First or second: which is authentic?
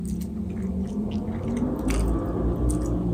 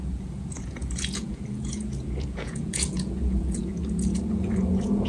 first